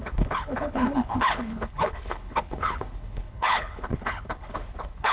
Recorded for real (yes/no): no